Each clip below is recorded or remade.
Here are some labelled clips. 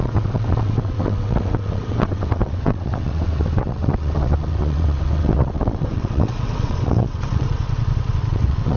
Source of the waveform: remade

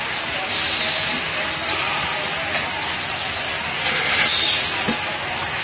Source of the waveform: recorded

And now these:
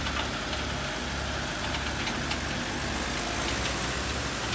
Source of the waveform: recorded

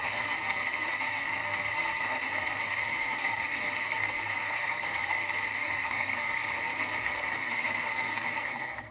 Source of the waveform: remade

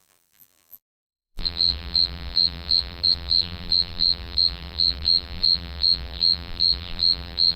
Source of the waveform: remade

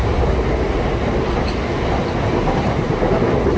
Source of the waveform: recorded